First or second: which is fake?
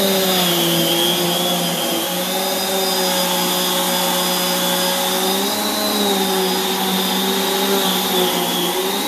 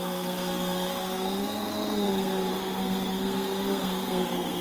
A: second